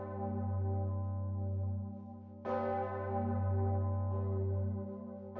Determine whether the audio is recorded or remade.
recorded